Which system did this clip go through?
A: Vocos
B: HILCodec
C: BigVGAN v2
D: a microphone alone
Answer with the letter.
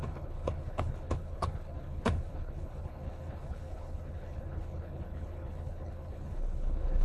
B